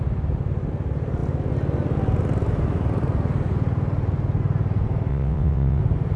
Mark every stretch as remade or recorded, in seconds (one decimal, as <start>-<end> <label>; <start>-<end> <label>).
0.0-5.1 recorded; 5.1-5.8 remade; 5.8-6.2 recorded